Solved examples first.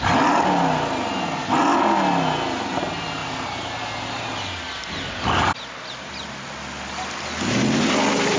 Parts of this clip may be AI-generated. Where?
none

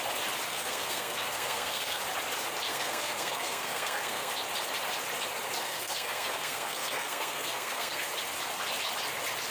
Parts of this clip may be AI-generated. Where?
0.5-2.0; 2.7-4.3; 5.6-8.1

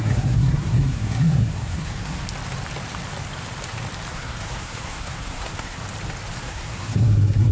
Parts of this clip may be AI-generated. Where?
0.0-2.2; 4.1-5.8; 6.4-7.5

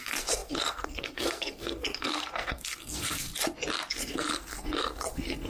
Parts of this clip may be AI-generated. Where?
0.0-3.3; 3.9-5.5